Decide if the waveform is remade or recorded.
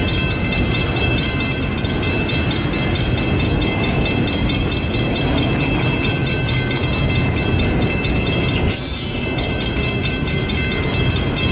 recorded